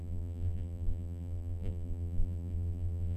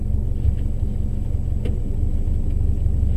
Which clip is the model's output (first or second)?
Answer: first